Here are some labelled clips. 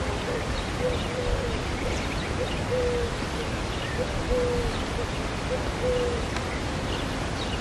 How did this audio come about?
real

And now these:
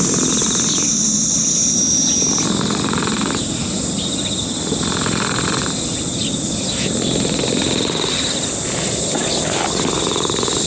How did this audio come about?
real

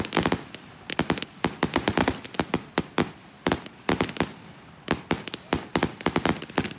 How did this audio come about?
real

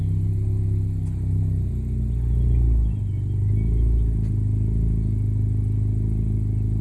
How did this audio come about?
real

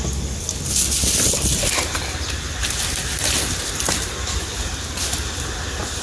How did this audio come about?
real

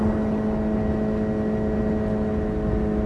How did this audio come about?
real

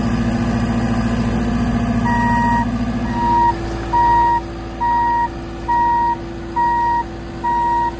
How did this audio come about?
real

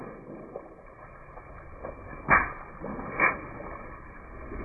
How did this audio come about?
real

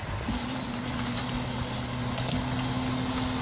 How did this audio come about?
real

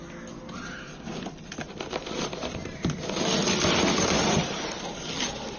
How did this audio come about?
real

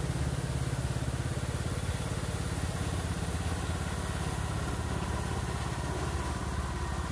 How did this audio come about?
real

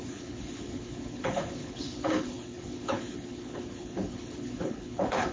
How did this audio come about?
fake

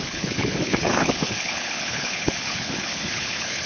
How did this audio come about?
fake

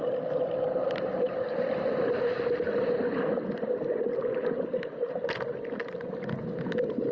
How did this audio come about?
real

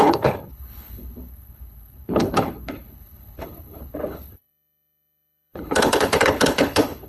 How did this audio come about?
fake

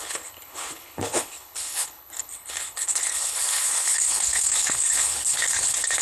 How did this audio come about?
fake